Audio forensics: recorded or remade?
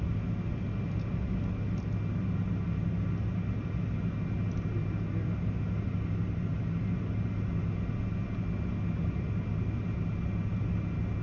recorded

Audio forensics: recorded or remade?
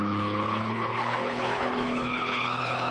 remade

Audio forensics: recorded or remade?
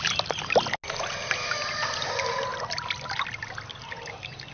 recorded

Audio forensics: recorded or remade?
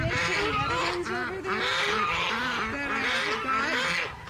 recorded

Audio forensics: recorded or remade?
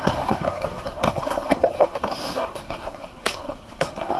remade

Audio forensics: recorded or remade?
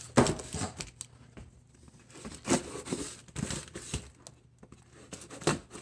recorded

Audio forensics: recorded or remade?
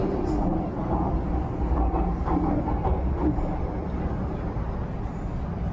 recorded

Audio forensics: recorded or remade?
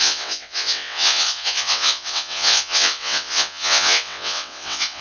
remade